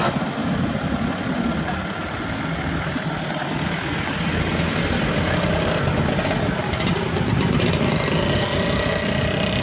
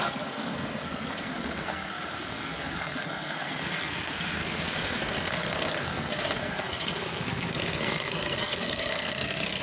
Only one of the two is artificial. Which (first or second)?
second